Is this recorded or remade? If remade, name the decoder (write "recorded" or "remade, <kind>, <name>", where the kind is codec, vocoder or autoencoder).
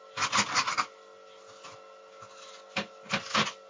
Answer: recorded